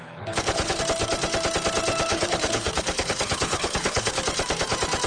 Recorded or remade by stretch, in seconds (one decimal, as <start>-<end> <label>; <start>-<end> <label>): 0.0-0.8 remade; 0.8-2.1 recorded; 2.1-4.2 remade; 4.2-5.1 recorded